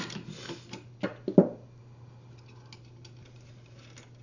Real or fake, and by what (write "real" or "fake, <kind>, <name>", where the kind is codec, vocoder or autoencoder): real